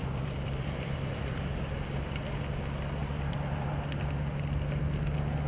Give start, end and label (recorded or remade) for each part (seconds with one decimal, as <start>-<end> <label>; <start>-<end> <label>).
0.0-1.5 remade; 1.5-3.0 recorded; 3.0-3.7 remade; 3.7-5.5 recorded